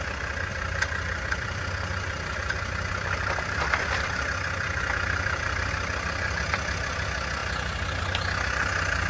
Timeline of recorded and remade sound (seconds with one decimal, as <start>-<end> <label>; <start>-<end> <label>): 0.0-0.5 recorded; 0.5-5.7 remade; 5.7-9.1 recorded